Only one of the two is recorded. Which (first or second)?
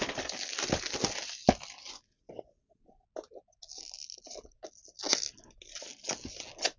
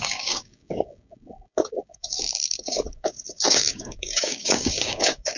first